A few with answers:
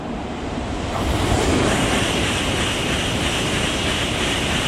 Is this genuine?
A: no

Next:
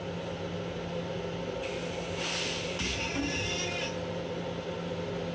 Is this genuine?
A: yes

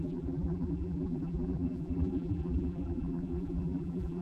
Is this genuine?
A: no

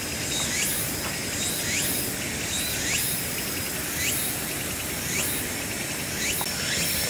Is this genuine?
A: yes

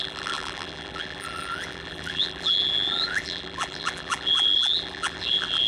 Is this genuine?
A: no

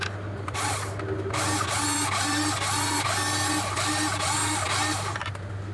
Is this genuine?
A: yes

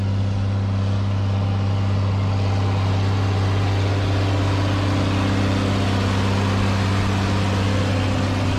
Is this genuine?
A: yes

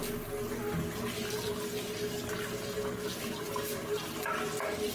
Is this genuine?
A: yes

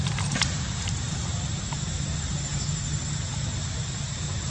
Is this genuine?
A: no